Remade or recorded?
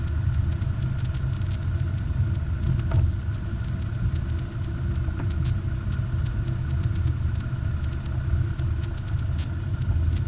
recorded